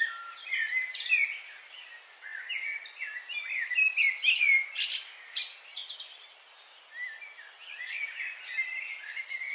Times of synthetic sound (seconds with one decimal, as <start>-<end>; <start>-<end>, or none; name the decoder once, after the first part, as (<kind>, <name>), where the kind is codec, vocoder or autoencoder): none